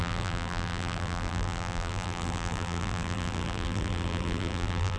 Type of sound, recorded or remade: remade